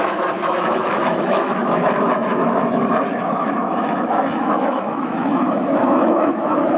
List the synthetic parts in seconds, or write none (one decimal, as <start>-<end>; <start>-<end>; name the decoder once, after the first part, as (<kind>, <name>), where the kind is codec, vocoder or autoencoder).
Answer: 0.0-6.8 (autoencoder, DAC-VAE)

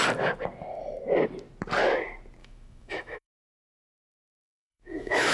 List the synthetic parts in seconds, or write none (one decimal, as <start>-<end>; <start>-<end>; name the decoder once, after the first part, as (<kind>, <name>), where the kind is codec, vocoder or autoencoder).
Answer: 2.4-5.3 (autoencoder, DAC-VAE)

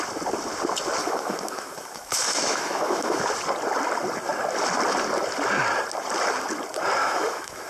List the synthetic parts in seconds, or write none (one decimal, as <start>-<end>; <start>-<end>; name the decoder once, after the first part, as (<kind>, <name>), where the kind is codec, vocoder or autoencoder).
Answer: 1.0-3.2 (autoencoder, DAC-VAE); 7.0-7.7

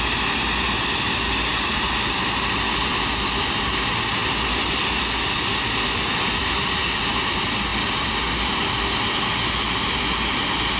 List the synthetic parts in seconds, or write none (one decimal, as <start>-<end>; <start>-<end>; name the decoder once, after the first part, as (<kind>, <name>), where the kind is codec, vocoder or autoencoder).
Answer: none

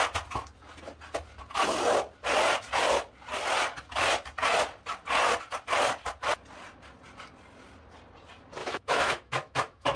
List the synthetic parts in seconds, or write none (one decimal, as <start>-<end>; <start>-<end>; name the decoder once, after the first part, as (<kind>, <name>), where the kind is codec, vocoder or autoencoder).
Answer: 8.6-10.0 (autoencoder, DAC-VAE)